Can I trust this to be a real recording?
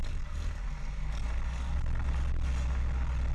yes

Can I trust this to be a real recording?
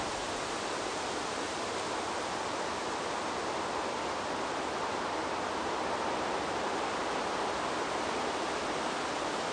yes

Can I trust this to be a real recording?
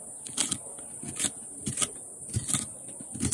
yes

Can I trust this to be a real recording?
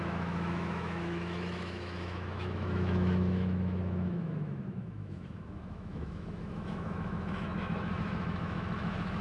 no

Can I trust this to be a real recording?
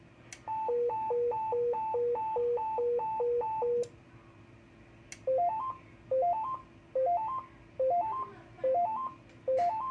yes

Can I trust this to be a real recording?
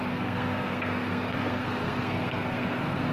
no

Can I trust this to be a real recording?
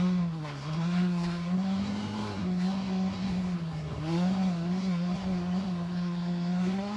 no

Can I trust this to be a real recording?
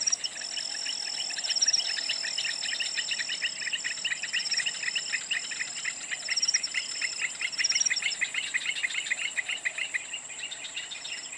yes